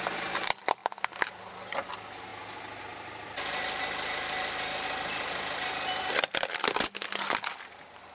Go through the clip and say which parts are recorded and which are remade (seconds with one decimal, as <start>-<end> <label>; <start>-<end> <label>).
0.0-8.1 recorded